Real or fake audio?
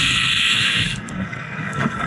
fake